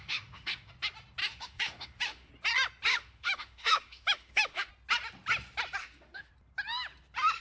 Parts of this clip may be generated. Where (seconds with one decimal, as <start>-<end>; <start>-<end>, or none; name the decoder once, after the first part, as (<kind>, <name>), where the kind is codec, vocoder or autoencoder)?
0.0-0.7 (autoencoder, DAC-VAE); 1.2-2.3; 2.9-4.7; 5.8-6.3